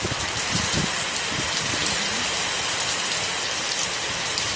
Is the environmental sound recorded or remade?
recorded